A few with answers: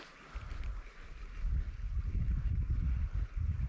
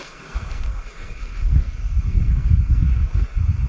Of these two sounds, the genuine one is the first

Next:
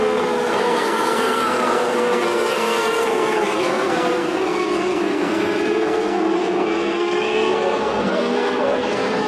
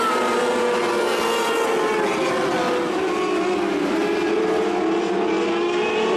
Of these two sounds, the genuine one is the second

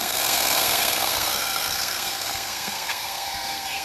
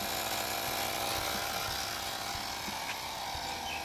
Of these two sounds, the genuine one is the second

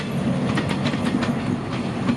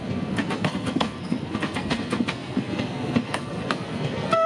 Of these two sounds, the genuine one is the first